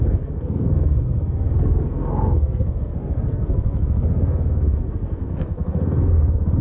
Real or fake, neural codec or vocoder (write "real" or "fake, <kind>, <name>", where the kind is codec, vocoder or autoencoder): fake, codec, SNAC